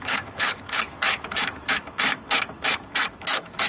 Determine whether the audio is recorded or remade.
remade